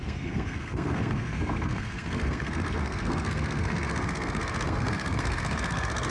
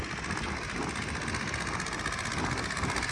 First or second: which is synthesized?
first